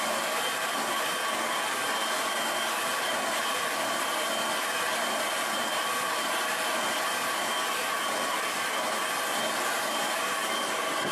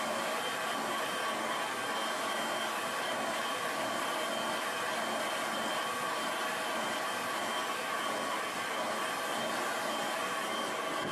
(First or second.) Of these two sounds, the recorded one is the second